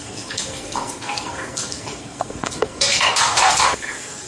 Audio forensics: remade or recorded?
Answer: remade